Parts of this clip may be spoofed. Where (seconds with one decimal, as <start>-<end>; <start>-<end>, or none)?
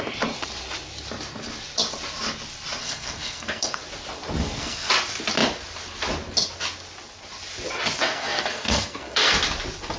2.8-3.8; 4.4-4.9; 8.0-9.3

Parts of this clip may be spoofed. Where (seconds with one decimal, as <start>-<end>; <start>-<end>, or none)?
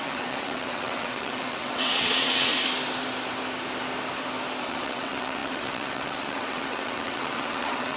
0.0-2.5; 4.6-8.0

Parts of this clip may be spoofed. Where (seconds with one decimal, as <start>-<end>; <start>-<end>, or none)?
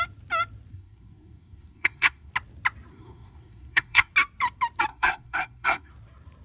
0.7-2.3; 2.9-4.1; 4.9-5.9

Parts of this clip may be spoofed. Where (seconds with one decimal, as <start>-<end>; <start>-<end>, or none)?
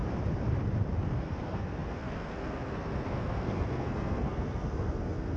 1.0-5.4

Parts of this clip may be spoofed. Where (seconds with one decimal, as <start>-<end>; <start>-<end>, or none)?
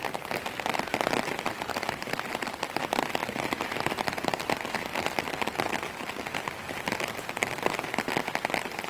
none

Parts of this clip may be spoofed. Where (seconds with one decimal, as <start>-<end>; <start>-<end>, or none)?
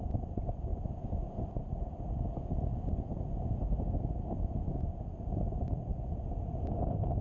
none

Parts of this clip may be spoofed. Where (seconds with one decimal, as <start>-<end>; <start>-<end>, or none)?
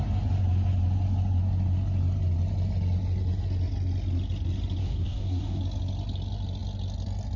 4.8-5.6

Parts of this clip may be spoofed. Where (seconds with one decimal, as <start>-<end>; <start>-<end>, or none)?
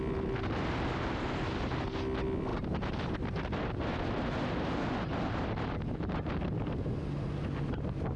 none